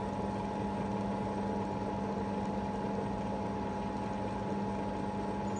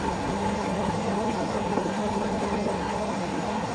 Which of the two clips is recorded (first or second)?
first